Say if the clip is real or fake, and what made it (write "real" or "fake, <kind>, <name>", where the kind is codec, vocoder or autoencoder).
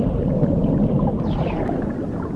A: real